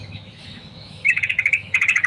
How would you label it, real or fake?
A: fake